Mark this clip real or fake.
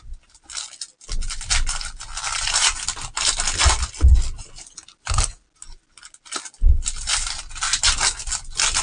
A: real